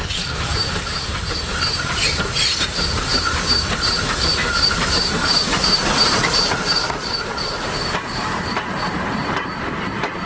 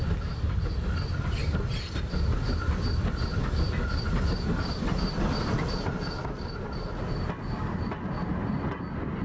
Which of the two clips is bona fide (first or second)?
second